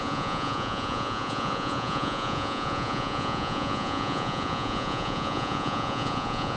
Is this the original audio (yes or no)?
no